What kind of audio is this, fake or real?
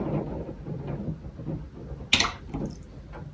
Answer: real